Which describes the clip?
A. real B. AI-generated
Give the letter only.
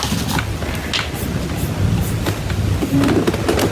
A